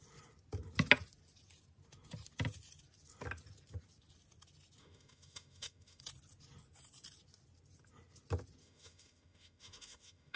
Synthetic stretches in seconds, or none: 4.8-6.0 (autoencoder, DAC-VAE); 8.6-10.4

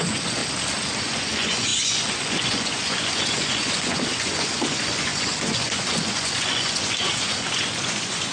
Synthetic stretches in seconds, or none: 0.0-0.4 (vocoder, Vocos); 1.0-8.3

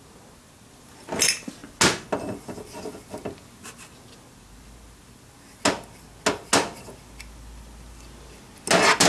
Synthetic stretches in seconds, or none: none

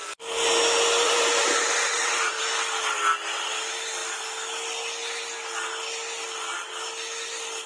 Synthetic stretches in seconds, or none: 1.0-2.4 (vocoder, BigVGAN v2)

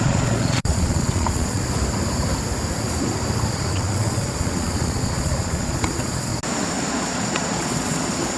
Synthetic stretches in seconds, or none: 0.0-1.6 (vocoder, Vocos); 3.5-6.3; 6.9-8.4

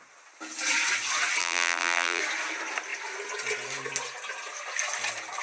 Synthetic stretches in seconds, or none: 1.4-2.2 (vocoder, BigVGAN v2)